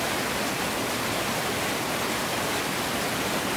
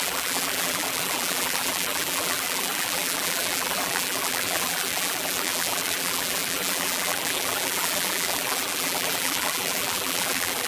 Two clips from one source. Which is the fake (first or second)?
second